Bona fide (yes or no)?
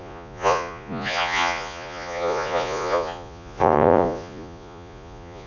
no